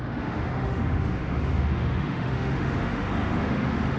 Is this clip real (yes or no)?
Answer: no